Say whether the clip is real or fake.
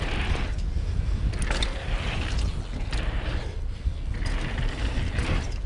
real